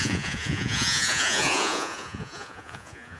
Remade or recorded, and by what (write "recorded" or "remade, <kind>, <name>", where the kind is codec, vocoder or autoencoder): remade, vocoder, Vocos